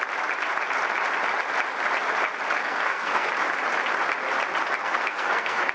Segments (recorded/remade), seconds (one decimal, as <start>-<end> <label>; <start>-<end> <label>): 0.0-2.6 recorded; 2.6-3.3 remade; 3.3-4.8 recorded; 4.8-5.7 remade